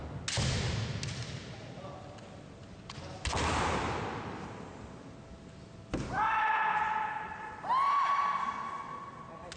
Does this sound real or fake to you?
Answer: real